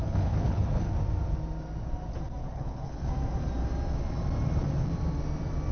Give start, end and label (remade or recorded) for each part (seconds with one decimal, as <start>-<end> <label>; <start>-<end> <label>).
0.0-0.9 remade; 0.9-2.4 recorded; 2.4-3.1 remade; 3.1-5.7 recorded